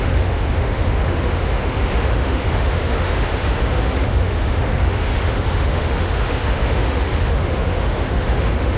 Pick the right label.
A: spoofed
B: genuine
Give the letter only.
A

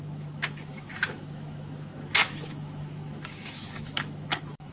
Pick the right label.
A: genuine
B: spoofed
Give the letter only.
B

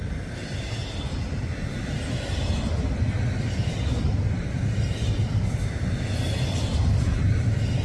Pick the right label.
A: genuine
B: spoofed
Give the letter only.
A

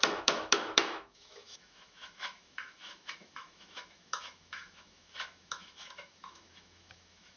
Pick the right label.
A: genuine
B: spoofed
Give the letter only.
B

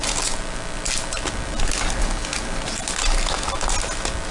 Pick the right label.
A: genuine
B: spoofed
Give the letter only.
A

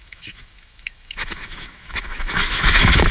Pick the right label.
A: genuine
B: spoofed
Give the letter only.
B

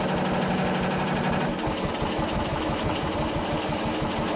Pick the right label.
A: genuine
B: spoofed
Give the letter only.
A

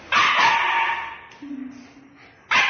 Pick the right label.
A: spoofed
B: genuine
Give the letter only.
B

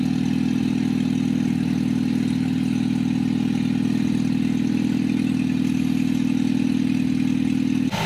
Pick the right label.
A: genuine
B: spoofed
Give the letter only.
A